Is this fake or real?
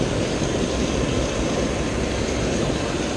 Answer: fake